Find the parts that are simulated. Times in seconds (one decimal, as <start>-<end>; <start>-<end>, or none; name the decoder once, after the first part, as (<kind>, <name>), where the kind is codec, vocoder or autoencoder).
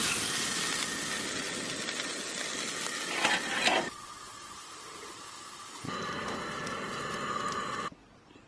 0.0-0.6 (vocoder, BigVGAN v2); 4.3-6.6